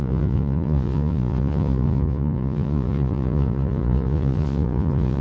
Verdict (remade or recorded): remade